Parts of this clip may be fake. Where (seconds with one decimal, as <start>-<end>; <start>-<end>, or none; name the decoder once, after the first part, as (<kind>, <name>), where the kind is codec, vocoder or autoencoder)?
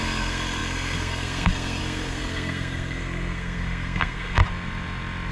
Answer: 0.0-4.4 (codec, SNAC)